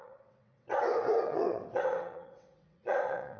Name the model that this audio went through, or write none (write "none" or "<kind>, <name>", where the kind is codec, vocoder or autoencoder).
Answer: vocoder, WaveNeXt